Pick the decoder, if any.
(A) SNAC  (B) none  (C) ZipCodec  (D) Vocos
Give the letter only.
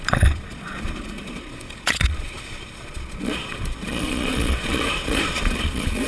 D